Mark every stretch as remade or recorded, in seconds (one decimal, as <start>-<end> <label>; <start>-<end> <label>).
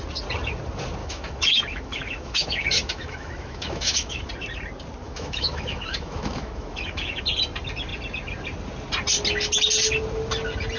0.0-1.0 recorded; 1.0-4.2 remade; 4.2-5.0 recorded; 5.0-7.2 remade; 7.2-10.8 recorded